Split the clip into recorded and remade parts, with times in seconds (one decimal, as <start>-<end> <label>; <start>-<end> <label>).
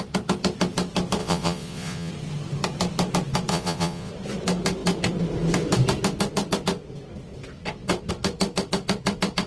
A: 0.0-1.2 recorded; 1.2-2.1 remade; 2.1-3.5 recorded; 3.5-4.1 remade; 4.1-9.5 recorded